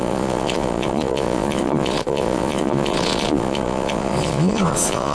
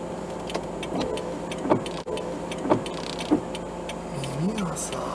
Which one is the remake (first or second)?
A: first